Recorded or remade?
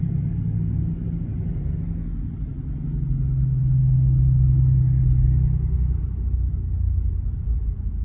recorded